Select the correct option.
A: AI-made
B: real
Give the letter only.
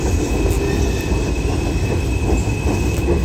B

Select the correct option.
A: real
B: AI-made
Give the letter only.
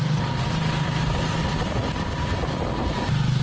A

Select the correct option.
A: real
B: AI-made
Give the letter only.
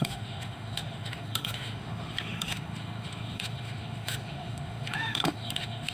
B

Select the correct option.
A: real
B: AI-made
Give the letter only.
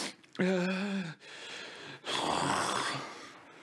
A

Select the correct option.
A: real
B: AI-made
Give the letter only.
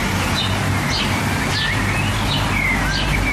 A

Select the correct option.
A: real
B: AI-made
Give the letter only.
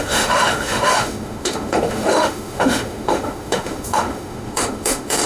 B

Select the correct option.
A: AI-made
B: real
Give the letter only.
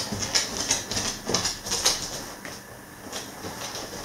B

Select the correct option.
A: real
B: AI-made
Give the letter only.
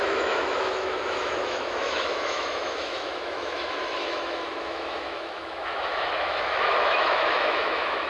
B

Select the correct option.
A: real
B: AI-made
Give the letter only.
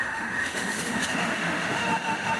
B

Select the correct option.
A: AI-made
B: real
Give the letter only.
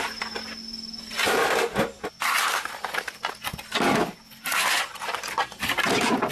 B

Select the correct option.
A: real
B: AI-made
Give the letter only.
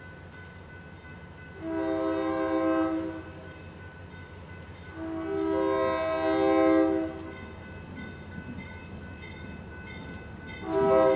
A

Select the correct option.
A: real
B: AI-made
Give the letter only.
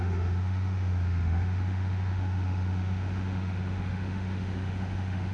B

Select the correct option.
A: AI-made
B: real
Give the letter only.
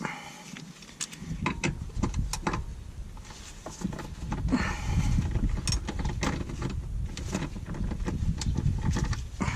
B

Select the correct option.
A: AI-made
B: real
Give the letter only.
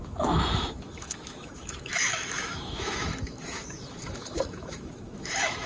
A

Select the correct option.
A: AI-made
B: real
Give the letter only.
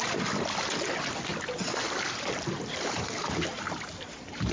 B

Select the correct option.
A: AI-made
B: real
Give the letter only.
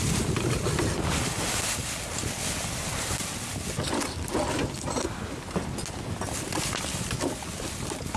B